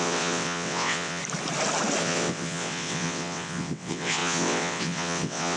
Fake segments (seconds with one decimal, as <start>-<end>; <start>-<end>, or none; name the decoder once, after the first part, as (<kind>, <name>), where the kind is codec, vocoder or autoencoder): 0.0-1.2 (vocoder, WaveNeXt); 2.0-5.6